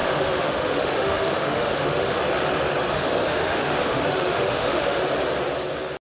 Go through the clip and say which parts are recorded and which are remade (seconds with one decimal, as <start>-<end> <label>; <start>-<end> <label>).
0.0-2.2 remade; 2.2-2.9 recorded; 2.9-5.0 remade; 5.0-6.1 recorded